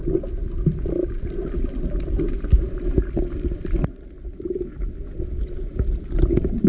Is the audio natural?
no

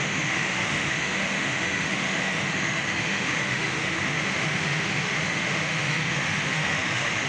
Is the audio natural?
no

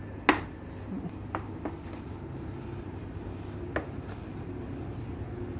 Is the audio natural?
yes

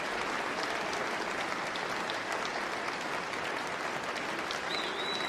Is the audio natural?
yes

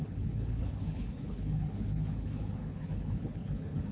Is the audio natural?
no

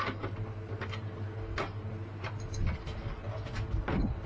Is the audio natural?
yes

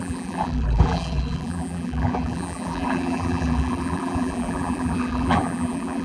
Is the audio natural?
no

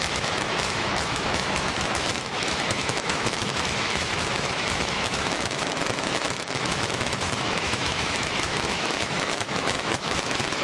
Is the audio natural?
no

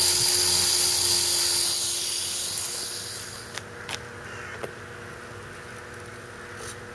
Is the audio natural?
yes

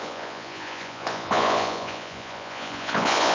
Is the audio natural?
no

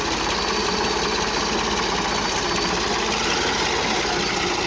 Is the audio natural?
yes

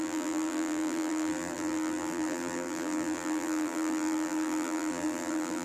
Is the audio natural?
no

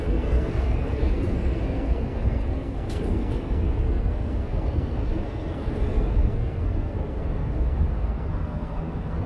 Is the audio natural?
no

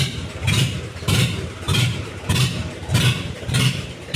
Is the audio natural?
no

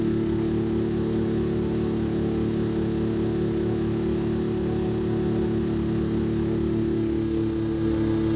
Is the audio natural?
no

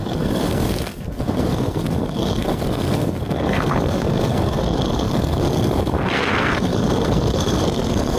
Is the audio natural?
no